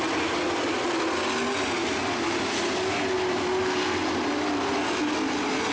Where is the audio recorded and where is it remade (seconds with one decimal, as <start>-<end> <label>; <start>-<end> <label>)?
0.0-5.7 recorded